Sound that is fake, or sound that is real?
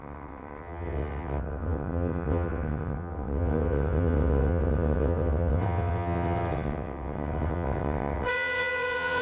fake